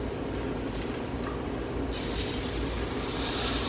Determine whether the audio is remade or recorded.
recorded